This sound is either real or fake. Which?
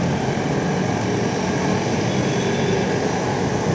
real